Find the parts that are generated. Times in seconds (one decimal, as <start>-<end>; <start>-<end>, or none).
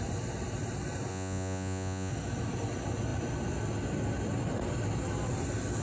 1.1-2.1